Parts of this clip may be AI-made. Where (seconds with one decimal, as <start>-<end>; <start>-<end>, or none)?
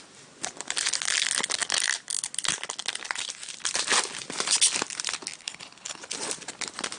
5.4-6.0